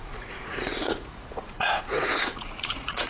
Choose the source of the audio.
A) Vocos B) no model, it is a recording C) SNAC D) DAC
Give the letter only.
A